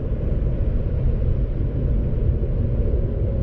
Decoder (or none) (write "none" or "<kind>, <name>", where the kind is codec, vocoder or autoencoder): none